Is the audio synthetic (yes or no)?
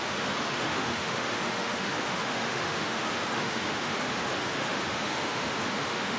yes